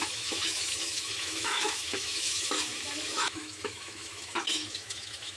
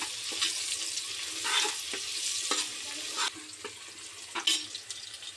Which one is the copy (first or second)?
first